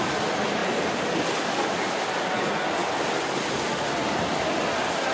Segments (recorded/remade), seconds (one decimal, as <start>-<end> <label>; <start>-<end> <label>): 0.0-5.1 recorded